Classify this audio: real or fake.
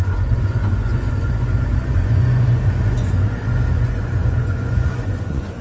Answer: fake